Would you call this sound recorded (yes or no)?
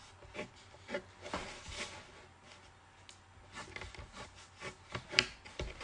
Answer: yes